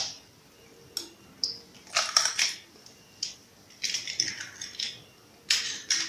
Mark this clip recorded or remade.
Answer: recorded